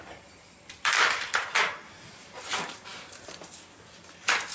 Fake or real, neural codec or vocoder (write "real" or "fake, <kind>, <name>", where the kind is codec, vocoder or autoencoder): fake, vocoder, BigVGAN v2